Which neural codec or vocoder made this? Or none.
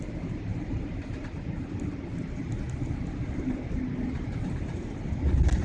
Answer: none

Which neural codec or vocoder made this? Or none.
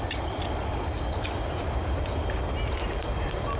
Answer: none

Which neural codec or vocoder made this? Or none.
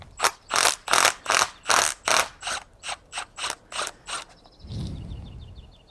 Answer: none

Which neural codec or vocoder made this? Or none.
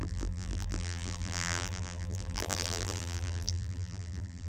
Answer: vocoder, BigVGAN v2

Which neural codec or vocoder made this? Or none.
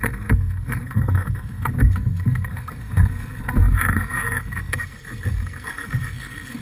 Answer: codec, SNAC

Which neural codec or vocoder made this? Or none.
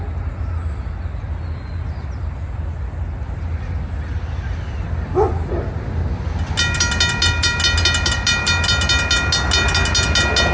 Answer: none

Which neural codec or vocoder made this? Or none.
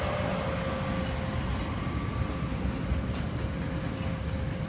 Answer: none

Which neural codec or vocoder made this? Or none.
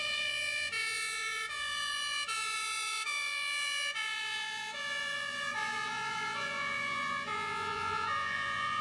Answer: vocoder, Vocos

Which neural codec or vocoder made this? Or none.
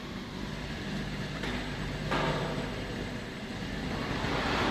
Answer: vocoder, BigVGAN v2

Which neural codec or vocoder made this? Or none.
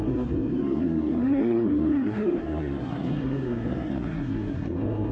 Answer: codec, SNAC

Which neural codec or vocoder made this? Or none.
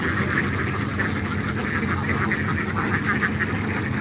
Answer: none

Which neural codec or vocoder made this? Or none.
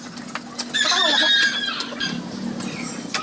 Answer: none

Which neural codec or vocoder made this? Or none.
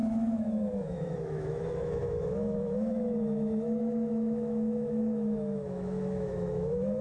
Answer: autoencoder, DAC-VAE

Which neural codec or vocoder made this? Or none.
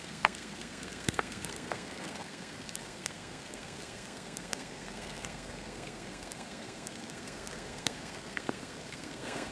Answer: codec, SNAC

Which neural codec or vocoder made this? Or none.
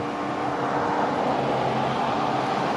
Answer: none